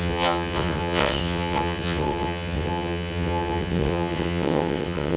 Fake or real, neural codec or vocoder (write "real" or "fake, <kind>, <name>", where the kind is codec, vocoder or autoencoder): fake, vocoder, WaveNeXt